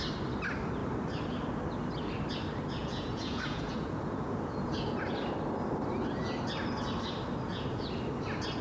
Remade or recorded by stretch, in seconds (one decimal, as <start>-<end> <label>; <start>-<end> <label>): 0.0-2.8 recorded; 2.8-5.0 remade; 5.0-7.5 recorded; 7.5-8.0 remade; 8.0-8.6 recorded